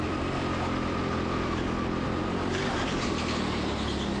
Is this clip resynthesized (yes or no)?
no